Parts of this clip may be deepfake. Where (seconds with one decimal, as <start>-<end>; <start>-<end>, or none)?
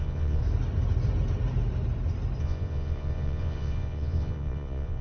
0.0-0.4; 2.4-5.0